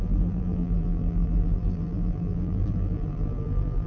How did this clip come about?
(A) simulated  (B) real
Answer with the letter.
A